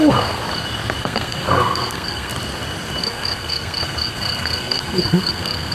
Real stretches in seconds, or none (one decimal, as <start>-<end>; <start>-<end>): 0.4-1.0; 2.3-3.0